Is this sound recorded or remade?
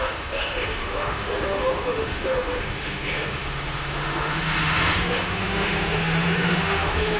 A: remade